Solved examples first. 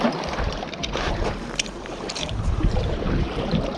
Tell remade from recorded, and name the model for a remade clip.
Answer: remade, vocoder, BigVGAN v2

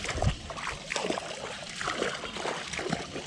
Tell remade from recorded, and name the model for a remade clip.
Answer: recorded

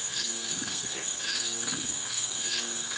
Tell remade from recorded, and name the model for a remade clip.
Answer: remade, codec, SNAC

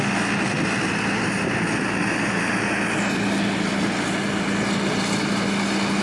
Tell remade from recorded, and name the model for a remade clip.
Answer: recorded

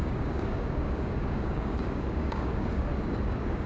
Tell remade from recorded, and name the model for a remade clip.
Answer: remade, codec, DAC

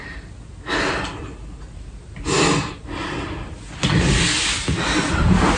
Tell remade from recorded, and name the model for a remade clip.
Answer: recorded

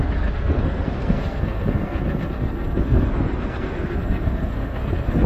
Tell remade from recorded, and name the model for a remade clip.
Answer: remade, codec, SNAC